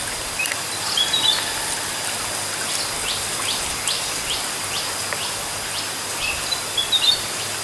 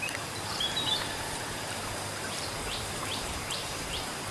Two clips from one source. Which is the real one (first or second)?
first